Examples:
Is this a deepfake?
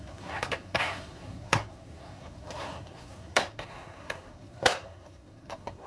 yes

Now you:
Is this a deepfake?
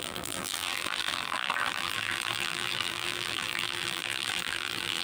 yes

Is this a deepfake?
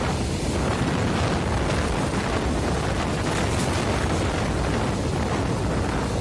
no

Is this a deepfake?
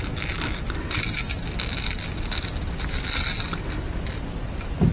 no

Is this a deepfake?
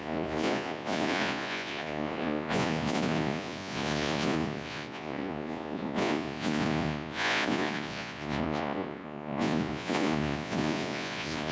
yes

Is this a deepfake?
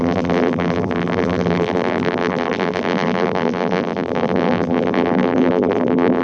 yes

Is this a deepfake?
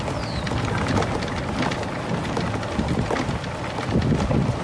no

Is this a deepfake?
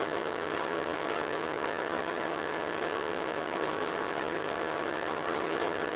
yes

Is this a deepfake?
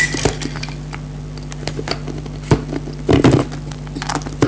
no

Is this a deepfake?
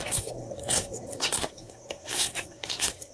yes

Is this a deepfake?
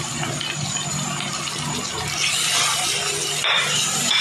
no